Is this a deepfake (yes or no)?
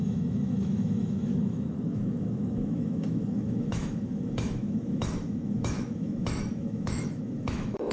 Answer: yes